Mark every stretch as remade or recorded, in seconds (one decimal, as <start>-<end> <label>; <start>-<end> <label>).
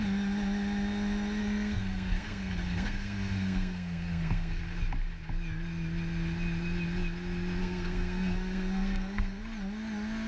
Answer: 0.0-1.4 recorded; 1.4-4.6 remade; 4.6-7.6 recorded; 7.6-9.4 remade; 9.4-10.3 recorded